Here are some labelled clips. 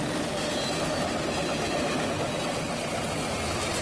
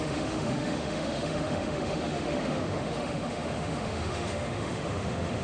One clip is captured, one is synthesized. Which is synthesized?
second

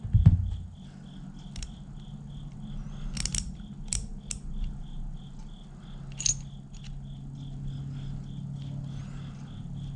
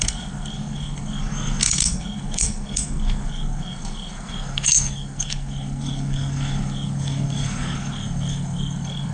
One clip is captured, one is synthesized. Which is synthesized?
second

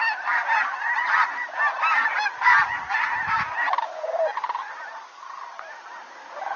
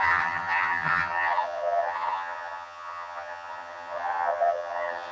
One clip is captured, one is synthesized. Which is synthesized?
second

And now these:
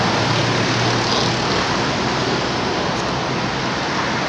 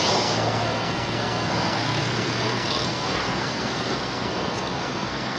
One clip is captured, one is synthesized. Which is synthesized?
second